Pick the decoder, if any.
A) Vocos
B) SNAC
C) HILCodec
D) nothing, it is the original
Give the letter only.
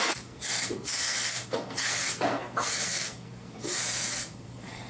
B